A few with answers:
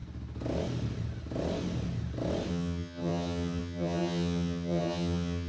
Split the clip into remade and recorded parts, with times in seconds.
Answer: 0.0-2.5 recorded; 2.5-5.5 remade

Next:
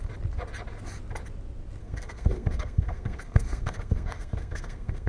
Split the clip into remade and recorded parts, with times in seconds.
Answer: 0.0-1.8 recorded; 1.8-5.1 remade

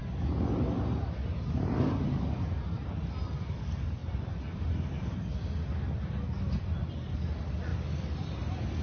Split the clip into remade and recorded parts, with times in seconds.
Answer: 0.0-4.0 recorded; 4.0-5.0 remade; 5.0-8.8 recorded

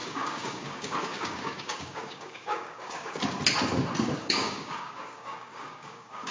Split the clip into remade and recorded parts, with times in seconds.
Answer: 0.0-3.2 remade; 3.2-4.2 recorded; 4.2-6.3 remade

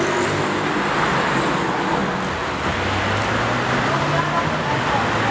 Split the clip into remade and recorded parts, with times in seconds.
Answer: 0.0-5.3 recorded

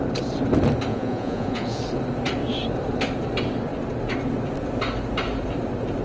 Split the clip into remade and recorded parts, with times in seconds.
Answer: 0.0-0.9 recorded; 0.9-1.8 remade; 1.8-6.0 recorded